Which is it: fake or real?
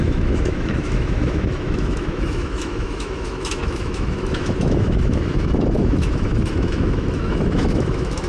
fake